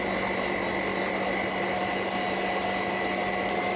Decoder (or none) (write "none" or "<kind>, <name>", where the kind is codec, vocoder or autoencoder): none